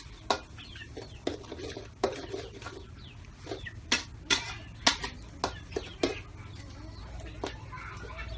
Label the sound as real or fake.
real